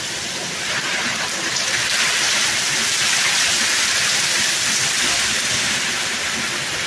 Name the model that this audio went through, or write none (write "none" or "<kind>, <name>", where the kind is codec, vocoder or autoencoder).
vocoder, BigVGAN v2